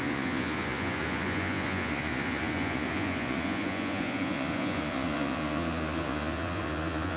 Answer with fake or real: fake